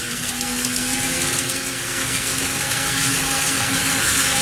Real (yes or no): no